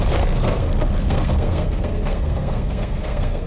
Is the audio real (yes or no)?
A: no